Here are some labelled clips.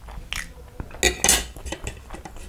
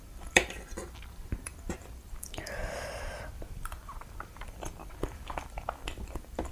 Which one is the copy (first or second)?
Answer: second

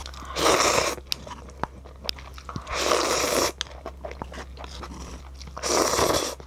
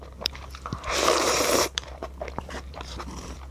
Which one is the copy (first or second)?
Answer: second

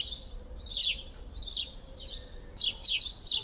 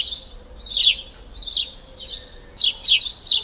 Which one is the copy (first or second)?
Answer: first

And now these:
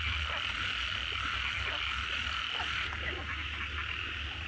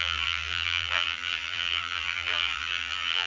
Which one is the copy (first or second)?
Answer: second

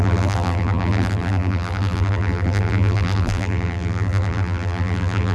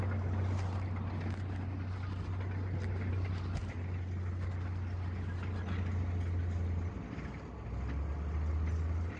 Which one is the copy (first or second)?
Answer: first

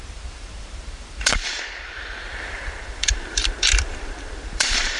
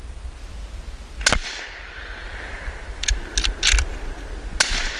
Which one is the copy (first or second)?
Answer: first